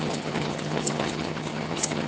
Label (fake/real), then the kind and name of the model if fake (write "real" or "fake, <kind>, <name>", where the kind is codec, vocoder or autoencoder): fake, vocoder, HiFi-GAN